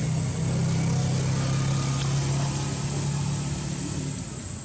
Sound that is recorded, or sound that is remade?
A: recorded